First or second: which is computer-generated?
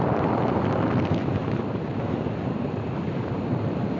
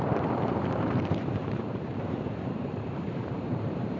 second